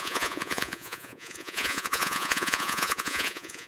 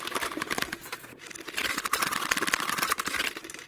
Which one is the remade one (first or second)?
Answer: first